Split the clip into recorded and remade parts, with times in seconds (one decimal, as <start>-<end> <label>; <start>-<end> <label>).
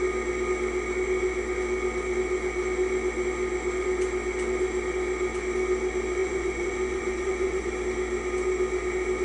0.0-6.2 recorded; 6.2-7.7 remade; 7.7-9.2 recorded